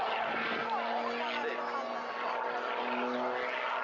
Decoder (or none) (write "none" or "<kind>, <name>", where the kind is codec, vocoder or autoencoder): none